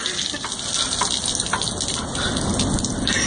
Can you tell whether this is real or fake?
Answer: real